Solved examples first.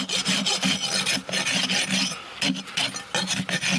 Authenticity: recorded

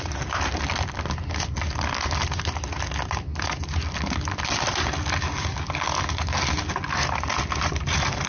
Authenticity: recorded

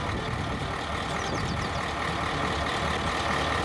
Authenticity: recorded